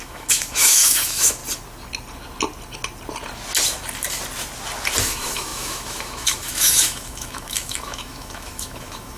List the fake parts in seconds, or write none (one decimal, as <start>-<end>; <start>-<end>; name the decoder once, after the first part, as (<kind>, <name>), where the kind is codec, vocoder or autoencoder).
0.0-1.4 (autoencoder, DAC-VAE); 5.0-9.2